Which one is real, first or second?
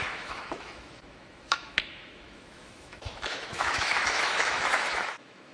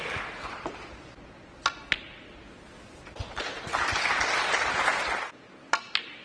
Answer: second